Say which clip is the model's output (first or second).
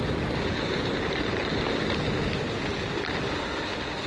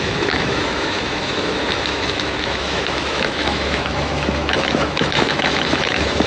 second